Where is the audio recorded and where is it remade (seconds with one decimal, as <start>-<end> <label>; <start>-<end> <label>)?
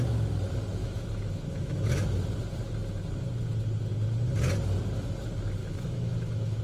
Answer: 0.0-0.8 recorded; 0.8-2.3 remade; 2.3-5.6 recorded; 5.6-6.6 remade